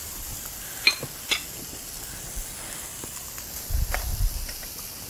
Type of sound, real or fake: real